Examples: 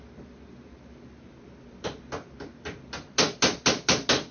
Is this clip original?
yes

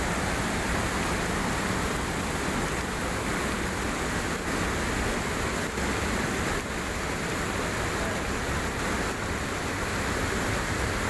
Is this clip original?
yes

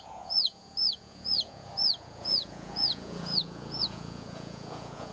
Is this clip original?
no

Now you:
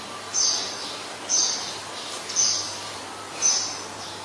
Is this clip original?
yes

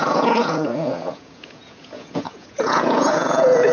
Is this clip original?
no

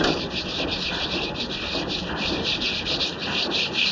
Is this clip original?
yes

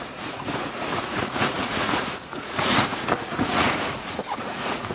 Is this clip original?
no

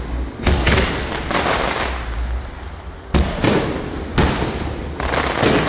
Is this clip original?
yes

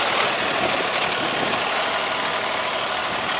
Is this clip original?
yes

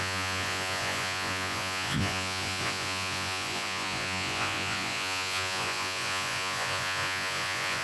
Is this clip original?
no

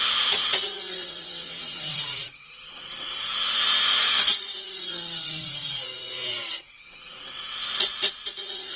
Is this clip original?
no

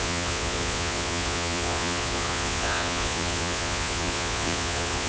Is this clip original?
no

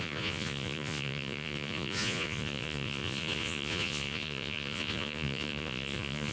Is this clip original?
no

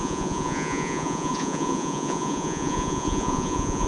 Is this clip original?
no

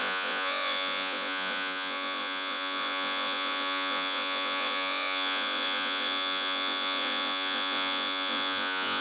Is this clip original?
no